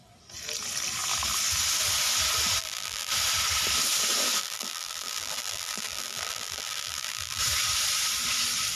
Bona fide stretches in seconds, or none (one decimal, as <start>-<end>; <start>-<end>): 0.0-2.6; 3.1-4.4; 7.4-8.8